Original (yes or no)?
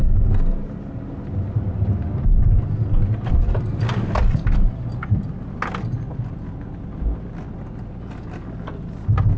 yes